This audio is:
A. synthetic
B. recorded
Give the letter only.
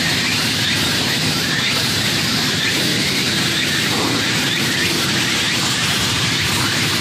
A